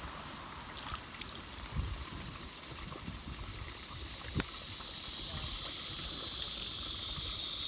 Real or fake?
real